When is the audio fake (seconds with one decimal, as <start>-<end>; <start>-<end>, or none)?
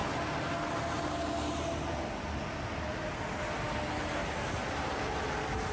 none